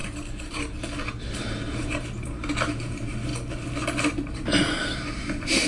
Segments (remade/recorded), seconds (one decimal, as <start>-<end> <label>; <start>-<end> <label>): 0.0-3.3 remade; 3.3-4.1 recorded; 4.1-5.7 remade